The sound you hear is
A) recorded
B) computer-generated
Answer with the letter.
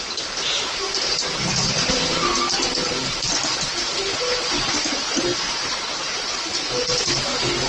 A